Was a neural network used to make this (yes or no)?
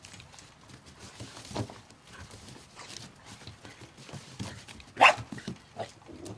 no